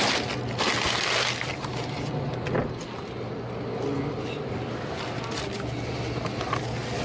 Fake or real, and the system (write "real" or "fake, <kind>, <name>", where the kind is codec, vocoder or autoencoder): real